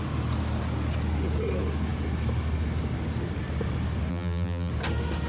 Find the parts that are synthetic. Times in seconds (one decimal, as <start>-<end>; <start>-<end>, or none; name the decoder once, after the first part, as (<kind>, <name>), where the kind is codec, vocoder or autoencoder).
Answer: 4.1-4.7 (vocoder, BigVGAN v2)